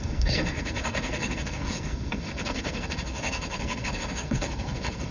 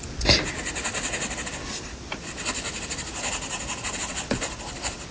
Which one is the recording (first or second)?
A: second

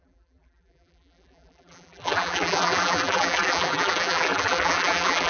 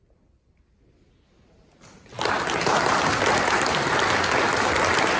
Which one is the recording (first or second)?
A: second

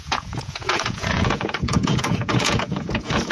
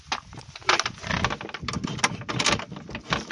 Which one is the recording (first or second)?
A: second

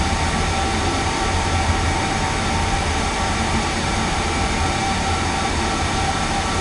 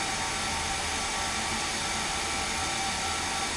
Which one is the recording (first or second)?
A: second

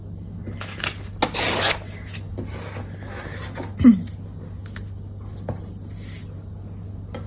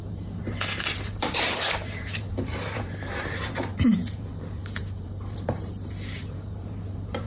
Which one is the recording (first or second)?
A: first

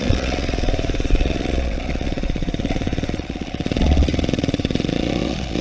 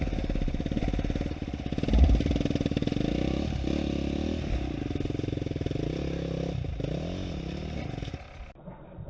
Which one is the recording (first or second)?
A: second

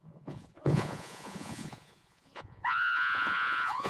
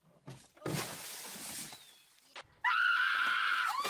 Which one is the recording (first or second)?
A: second